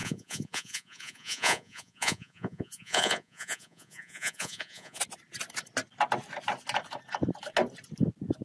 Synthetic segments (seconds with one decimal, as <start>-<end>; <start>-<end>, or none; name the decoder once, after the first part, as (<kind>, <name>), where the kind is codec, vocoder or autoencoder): 0.0-5.0 (vocoder, Vocos)